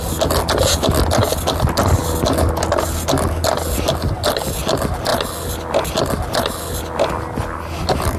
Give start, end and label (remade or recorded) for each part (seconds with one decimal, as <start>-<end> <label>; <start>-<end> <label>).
0.0-8.2 recorded